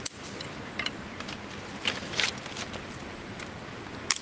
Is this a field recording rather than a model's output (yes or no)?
yes